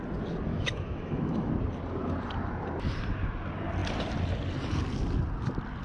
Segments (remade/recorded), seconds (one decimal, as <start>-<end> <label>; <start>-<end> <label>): 0.0-0.5 recorded; 0.5-1.5 remade; 1.5-5.8 recorded

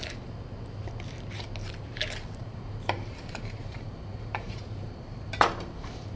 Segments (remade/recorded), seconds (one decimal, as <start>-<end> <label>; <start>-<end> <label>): 0.0-2.4 recorded; 2.4-6.2 remade

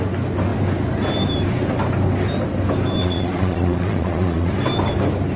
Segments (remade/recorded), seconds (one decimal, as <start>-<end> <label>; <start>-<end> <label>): 0.0-3.0 recorded; 3.0-4.5 remade; 4.5-5.4 recorded